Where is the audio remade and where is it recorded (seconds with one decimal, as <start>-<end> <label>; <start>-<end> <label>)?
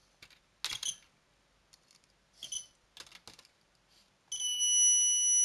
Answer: 0.0-5.4 recorded